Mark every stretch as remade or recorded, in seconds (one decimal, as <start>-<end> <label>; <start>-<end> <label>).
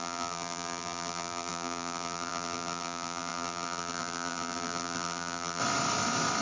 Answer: 0.0-5.6 remade; 5.6-6.4 recorded